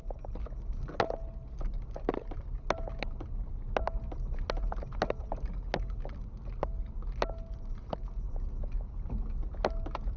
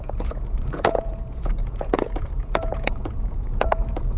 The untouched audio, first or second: first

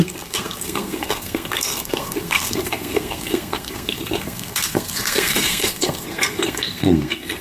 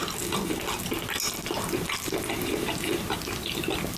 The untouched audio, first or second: second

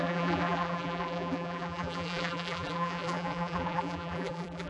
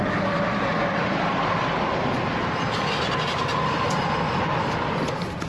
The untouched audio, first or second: second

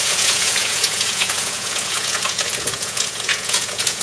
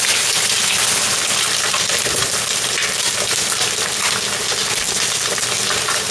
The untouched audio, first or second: second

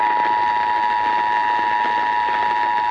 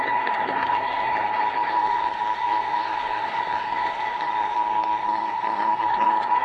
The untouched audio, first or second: first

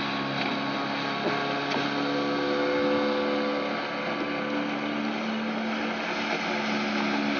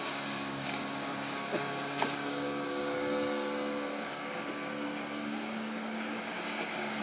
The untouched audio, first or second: first